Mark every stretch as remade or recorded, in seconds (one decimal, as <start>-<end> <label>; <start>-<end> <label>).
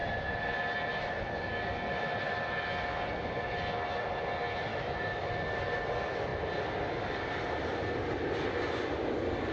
0.0-4.7 recorded; 4.7-5.3 remade; 5.3-9.5 recorded